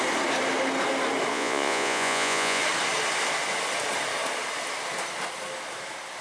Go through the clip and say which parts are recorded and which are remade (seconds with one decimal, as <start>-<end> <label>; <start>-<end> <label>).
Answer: 0.0-1.3 recorded; 1.3-2.6 remade; 2.6-6.2 recorded